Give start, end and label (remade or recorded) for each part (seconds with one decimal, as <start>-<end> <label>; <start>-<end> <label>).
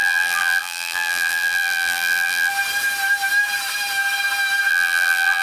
0.0-2.5 remade; 2.5-4.7 recorded; 4.7-5.4 remade